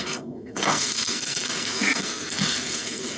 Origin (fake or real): fake